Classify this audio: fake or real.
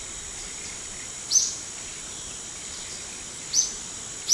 real